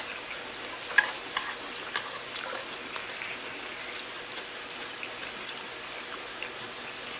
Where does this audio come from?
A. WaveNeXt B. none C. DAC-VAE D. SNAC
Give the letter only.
B